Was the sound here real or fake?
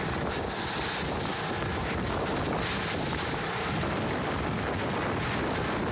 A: real